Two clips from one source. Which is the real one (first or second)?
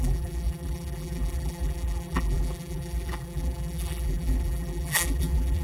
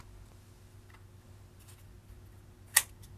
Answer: second